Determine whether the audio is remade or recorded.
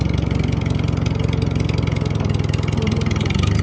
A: recorded